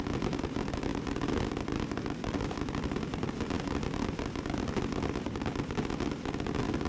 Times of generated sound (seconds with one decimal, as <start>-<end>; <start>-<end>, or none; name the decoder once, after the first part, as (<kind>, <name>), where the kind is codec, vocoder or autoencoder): none